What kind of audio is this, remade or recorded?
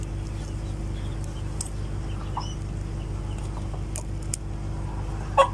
recorded